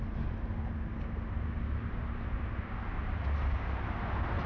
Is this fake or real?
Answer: real